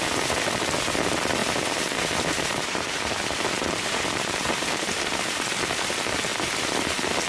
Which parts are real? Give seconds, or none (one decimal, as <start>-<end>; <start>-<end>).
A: 0.0-1.4; 5.6-7.3